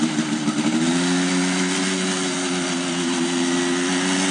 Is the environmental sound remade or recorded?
recorded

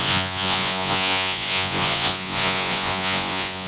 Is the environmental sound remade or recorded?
remade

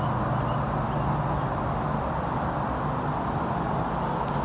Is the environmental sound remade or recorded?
recorded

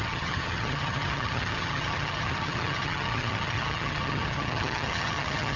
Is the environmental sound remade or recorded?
remade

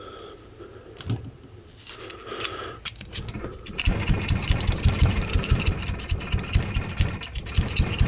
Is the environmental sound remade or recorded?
recorded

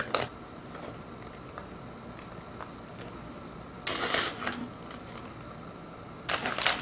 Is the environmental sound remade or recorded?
recorded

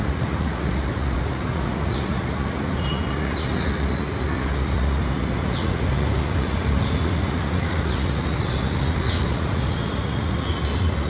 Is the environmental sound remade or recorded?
remade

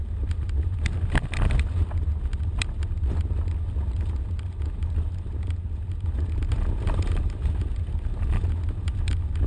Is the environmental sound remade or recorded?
recorded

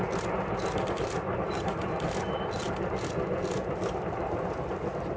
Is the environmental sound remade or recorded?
recorded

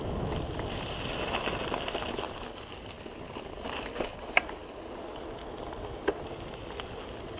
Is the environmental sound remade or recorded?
recorded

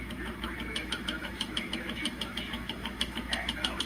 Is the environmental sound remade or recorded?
remade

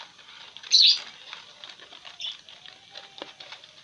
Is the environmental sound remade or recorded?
recorded